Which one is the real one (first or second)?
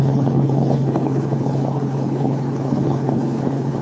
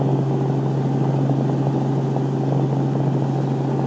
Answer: second